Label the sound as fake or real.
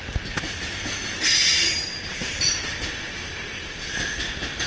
real